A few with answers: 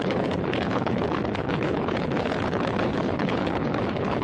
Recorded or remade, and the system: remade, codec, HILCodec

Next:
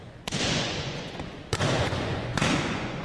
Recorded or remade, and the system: remade, vocoder, Vocos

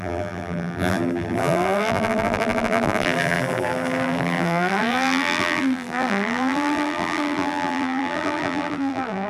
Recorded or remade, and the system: remade, vocoder, BigVGAN v2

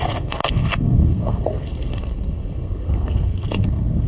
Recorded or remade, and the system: remade, codec, SNAC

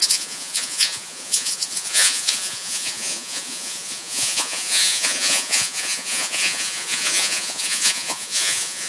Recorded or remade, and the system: remade, vocoder, Vocos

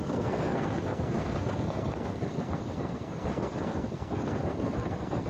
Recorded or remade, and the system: remade, codec, SNAC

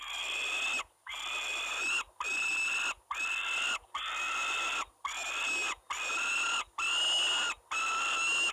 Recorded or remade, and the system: recorded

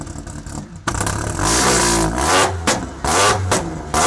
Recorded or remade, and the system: recorded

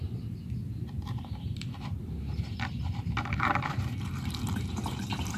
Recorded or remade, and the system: remade, vocoder, BigVGAN v2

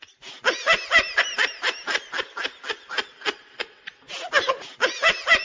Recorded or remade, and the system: recorded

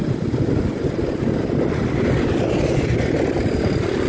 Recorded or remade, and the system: recorded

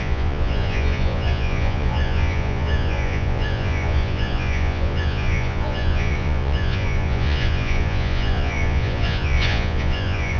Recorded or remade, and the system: remade, vocoder, Vocos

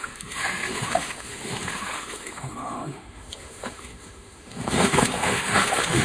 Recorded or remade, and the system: remade, autoencoder, DAC-VAE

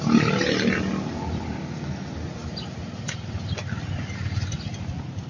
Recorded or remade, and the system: recorded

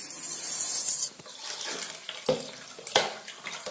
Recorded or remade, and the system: recorded